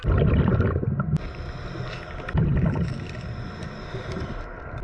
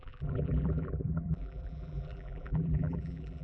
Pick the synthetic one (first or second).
second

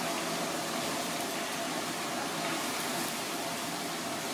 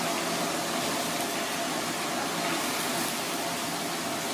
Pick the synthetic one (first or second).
first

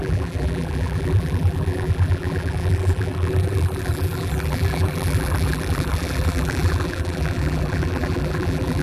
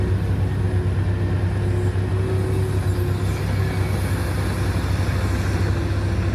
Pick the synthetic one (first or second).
first